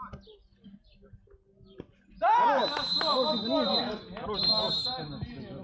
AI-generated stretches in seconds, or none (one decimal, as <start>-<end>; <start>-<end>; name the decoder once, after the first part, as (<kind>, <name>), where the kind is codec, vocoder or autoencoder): none